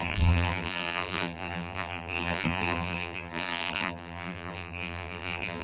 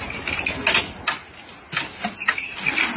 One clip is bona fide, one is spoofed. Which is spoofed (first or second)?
first